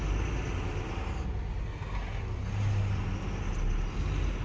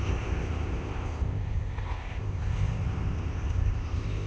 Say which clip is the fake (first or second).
second